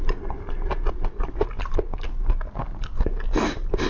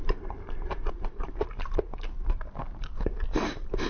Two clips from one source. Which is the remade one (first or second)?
second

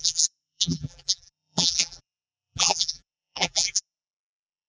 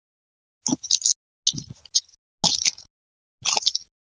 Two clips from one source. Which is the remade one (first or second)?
first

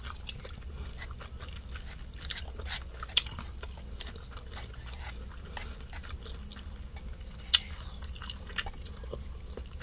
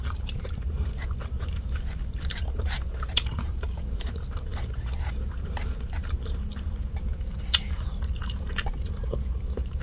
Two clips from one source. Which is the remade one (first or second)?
second